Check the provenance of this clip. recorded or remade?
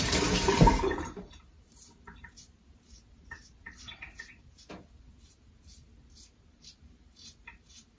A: remade